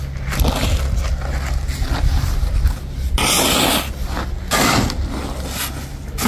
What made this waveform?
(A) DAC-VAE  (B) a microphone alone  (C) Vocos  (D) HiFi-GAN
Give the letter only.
B